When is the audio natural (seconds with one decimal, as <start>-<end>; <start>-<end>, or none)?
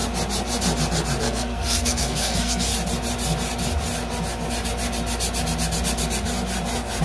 0.0-1.2; 2.7-7.0